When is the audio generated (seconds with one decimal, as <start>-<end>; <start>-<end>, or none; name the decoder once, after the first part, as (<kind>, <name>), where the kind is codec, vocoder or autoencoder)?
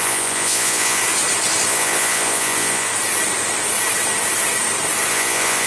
0.0-1.0 (vocoder, Vocos); 1.7-2.9; 5.1-5.7